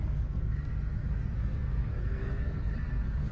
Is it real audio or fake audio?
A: fake